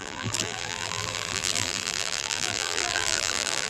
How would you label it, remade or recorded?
remade